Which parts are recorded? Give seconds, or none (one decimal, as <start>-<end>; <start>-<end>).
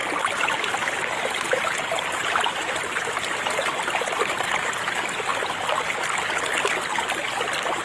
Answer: 0.0-7.8